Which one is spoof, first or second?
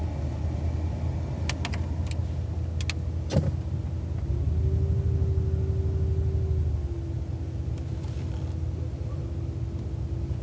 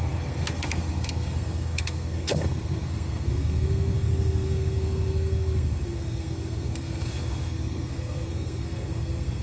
second